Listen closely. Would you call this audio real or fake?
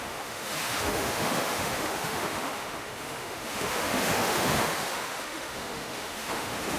fake